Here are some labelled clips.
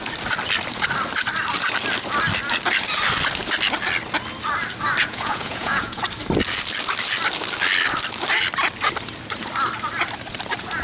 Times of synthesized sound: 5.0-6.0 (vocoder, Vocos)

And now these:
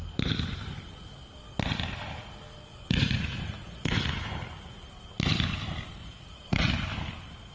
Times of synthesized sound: 2.7-4.1 (vocoder, Vocos); 6.0-6.7

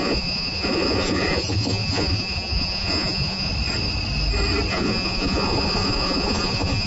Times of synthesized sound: 0.0-3.5 (vocoder, Vocos); 4.7-6.9

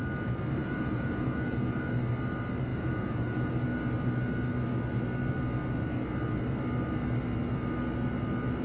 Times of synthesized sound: 0.6-1.8 (vocoder, Vocos); 2.7-3.5

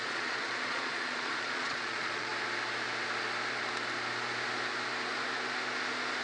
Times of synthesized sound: 0.0-2.3 (vocoder, Vocos)

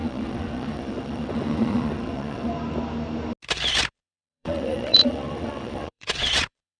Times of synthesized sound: 0.0-2.5 (vocoder, Vocos); 3.9-6.8